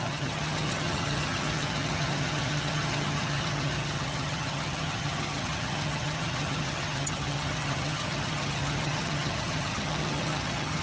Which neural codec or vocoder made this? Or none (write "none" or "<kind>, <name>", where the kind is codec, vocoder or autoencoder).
vocoder, HiFi-GAN